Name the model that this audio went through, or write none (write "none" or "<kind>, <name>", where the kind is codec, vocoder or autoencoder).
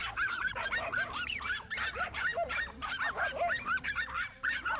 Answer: vocoder, BigVGAN v2